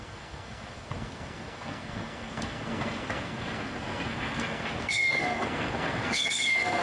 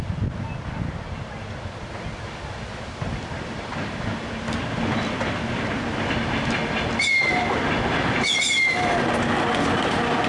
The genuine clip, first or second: second